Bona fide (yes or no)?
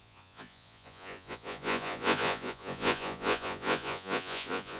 no